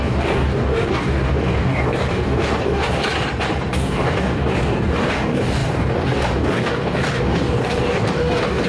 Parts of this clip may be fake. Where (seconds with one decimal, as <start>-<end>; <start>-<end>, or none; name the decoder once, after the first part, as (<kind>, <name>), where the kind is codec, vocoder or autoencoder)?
0.0-3.1 (codec, DAC); 3.7-8.7